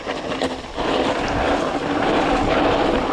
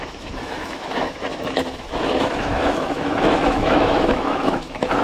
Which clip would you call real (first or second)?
first